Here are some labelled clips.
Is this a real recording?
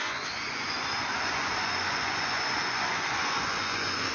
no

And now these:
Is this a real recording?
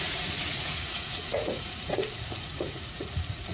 no